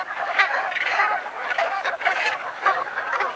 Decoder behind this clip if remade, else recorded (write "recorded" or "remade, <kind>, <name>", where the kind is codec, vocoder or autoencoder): remade, codec, DAC